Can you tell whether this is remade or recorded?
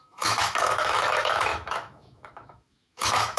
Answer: remade